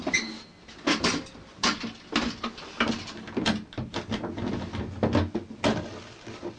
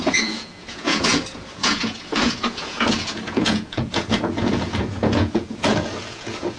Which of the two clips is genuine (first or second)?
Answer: first